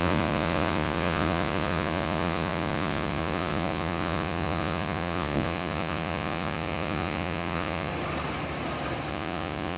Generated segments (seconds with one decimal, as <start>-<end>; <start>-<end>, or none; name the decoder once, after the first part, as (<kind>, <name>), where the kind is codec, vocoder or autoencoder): 0.0-7.9 (vocoder, Vocos); 9.1-9.8